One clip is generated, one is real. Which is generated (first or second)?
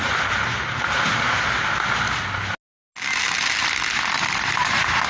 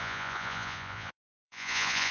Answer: second